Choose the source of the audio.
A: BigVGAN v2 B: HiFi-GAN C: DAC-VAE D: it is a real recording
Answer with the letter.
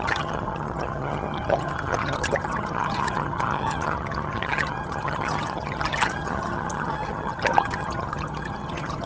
B